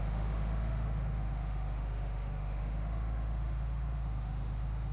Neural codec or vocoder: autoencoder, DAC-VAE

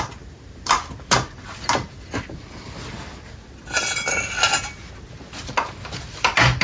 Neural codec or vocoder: none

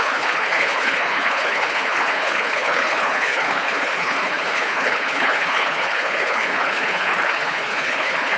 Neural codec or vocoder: codec, HILCodec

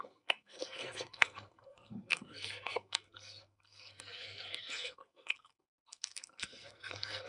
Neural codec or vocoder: codec, SNAC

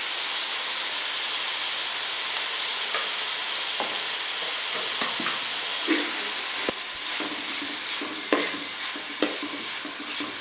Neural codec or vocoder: none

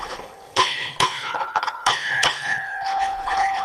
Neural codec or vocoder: codec, HILCodec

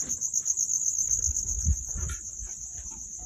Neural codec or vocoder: none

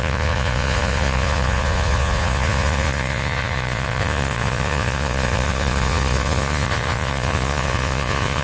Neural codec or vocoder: vocoder, Vocos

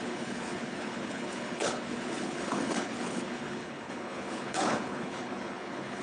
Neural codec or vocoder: codec, HILCodec